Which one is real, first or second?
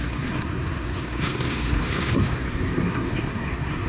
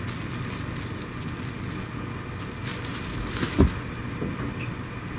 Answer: second